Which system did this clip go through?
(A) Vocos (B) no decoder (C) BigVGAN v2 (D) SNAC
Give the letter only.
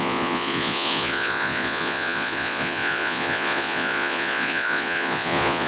A